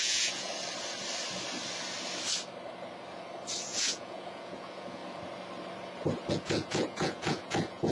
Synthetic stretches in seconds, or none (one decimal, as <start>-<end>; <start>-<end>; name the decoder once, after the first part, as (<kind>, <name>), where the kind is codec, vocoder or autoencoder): 0.0-0.5 (vocoder, Vocos); 3.6-5.0; 6.3-7.9

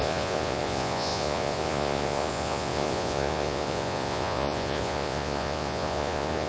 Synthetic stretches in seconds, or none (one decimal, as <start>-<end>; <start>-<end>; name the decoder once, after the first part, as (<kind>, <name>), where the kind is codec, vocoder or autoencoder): 0.0-6.5 (vocoder, Vocos)